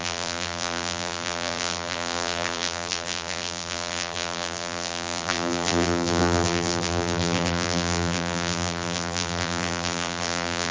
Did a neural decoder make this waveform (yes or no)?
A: yes